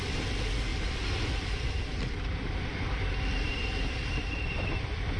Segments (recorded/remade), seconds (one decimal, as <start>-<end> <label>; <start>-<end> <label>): 0.0-1.9 recorded; 1.9-5.2 remade